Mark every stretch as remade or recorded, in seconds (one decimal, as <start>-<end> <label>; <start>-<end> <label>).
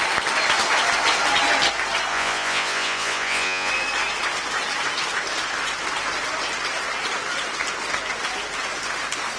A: 0.0-2.1 recorded; 2.1-3.7 remade; 3.7-9.4 recorded